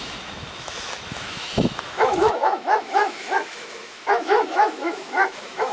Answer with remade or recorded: remade